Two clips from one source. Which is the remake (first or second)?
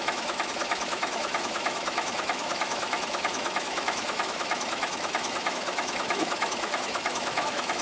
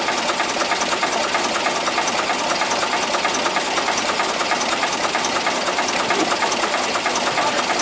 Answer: first